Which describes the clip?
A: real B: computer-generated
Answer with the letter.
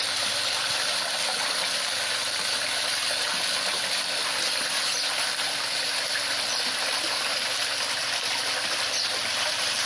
B